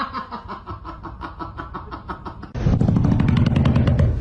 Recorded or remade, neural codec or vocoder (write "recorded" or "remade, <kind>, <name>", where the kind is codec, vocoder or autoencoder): recorded